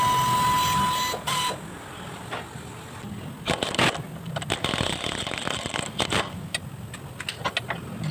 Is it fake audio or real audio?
real